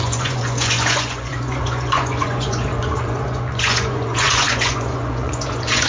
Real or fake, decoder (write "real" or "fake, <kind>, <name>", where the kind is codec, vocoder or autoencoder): fake, vocoder, Vocos